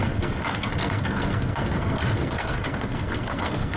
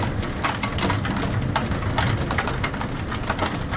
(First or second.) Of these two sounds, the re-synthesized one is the first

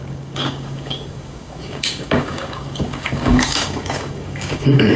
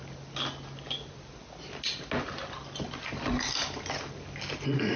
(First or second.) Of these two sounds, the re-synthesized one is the first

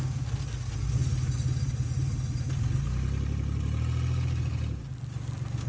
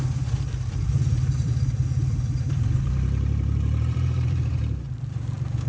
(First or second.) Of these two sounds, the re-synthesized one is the second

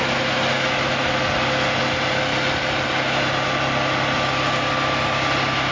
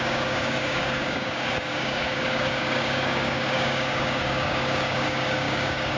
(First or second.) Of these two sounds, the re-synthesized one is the second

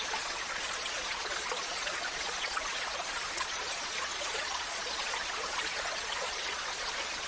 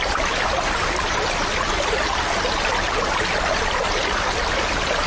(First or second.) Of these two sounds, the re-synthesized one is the first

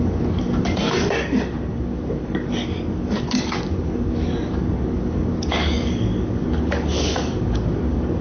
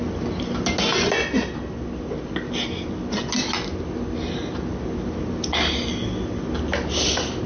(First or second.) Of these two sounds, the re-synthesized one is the first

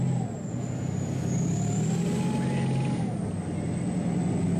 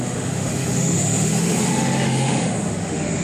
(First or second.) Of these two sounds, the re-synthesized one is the second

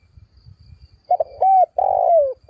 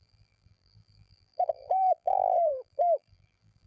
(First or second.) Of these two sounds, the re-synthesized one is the second